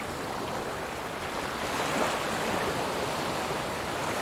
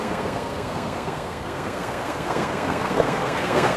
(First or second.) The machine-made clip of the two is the second